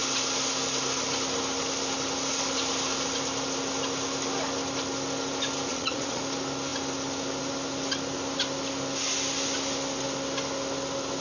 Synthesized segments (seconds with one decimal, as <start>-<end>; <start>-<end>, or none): 5.7-6.2